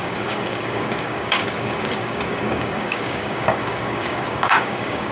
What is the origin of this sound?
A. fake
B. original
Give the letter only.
A